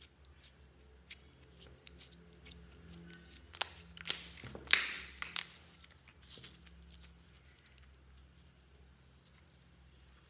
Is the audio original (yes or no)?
yes